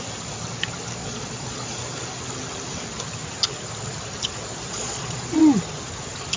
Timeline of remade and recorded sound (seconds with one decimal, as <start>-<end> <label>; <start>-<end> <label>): 0.0-1.0 recorded; 1.0-1.8 remade; 1.8-4.7 recorded; 4.7-5.4 remade; 5.4-6.4 recorded